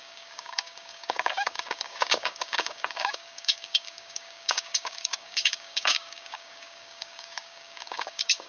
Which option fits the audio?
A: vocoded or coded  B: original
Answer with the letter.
A